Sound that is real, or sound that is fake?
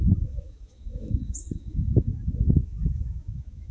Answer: fake